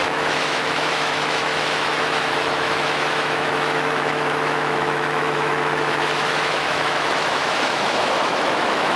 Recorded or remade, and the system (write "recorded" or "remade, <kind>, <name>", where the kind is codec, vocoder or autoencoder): remade, autoencoder, DAC-VAE